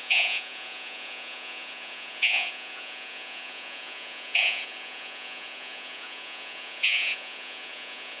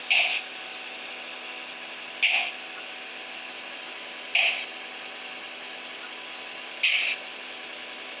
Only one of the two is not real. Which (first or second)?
first